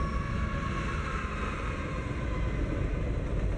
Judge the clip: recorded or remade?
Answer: recorded